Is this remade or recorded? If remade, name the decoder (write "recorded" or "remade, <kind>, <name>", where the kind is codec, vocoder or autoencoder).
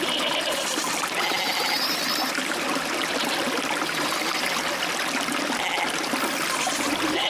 recorded